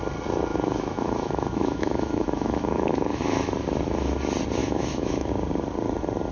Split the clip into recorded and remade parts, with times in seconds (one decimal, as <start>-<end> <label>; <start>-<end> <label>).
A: 0.0-0.5 recorded; 0.5-3.5 remade; 3.5-4.6 recorded; 4.6-5.3 remade; 5.3-6.3 recorded